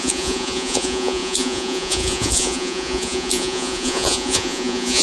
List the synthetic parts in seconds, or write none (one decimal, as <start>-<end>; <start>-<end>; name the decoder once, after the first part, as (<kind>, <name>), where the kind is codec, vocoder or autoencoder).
0.0-5.0 (vocoder, Vocos)